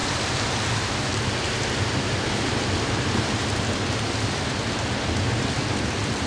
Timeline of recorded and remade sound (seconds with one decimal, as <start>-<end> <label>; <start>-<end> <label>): 0.0-6.3 recorded